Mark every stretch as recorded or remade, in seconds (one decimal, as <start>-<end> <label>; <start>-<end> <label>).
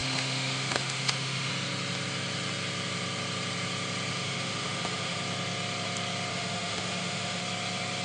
0.0-1.5 remade; 1.5-4.1 recorded; 4.1-5.2 remade; 5.2-6.3 recorded; 6.3-7.4 remade; 7.4-8.0 recorded